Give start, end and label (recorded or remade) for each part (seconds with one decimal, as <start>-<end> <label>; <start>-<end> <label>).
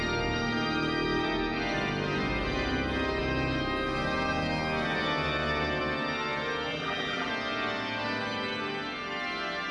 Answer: 0.0-6.7 recorded; 6.7-7.3 remade; 7.3-9.7 recorded